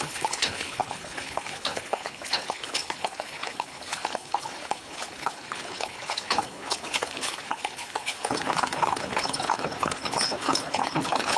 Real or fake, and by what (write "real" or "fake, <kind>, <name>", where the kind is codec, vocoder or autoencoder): fake, codec, HILCodec